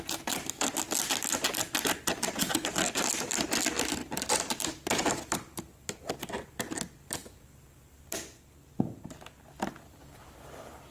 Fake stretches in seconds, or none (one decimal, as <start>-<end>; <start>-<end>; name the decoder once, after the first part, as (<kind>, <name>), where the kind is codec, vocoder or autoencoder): none